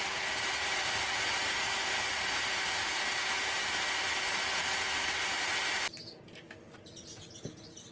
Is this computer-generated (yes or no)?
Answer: no